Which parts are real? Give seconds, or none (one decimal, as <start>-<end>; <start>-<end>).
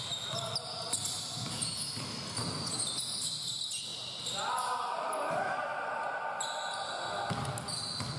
0.0-8.2